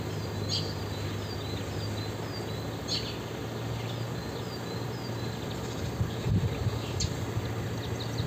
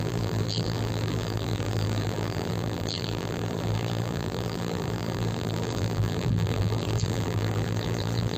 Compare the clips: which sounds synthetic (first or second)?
second